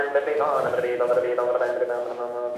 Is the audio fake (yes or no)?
yes